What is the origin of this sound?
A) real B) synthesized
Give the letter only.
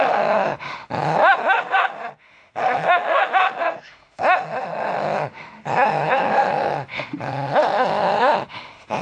B